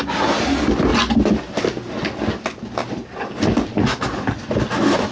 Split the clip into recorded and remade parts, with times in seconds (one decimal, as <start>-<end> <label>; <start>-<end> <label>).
0.0-5.1 recorded